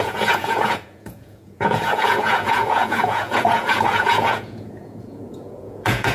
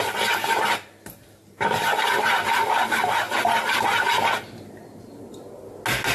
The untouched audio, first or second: second